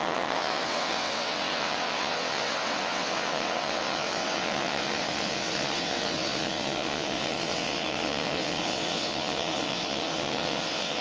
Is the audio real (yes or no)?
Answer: no